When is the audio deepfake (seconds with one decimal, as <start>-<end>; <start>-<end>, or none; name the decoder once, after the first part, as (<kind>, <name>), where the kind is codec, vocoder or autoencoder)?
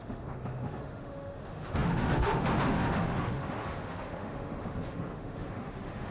0.0-6.1 (autoencoder, DAC-VAE)